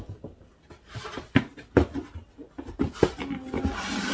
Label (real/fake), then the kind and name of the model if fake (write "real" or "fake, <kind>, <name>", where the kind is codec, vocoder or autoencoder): real